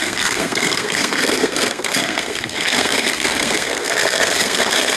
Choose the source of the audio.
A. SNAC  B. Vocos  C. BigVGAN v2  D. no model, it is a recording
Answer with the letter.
A